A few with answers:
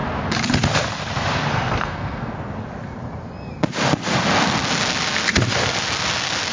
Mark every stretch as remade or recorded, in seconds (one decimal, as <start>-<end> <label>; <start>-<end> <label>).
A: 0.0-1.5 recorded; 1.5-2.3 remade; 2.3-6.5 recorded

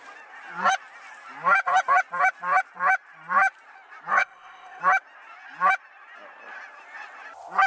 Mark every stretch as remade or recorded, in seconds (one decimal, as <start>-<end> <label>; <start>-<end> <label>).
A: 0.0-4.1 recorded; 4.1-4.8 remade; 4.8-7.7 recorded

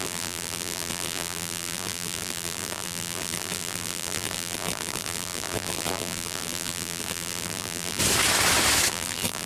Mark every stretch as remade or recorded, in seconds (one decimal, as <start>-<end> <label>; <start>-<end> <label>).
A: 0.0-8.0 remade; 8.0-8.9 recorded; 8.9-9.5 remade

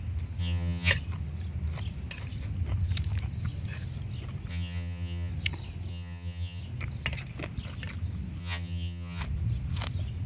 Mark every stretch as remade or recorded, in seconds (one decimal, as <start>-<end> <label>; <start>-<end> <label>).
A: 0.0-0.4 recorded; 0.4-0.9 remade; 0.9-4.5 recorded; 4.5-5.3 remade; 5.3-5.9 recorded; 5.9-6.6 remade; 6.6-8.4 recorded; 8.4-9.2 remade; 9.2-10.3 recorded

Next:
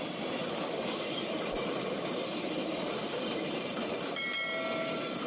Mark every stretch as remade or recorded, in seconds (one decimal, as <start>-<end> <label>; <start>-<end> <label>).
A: 0.0-0.4 recorded; 0.4-1.8 remade; 1.8-2.6 recorded; 2.6-4.0 remade; 4.0-5.3 recorded